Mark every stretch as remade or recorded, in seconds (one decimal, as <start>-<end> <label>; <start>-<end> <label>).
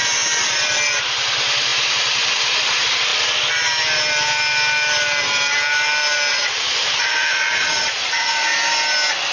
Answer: 0.0-6.3 recorded; 6.3-8.5 remade; 8.5-9.3 recorded